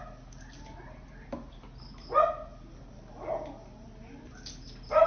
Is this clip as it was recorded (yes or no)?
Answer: yes